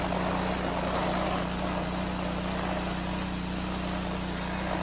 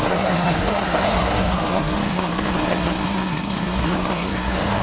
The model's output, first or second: second